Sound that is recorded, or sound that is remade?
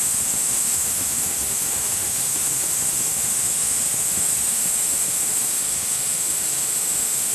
remade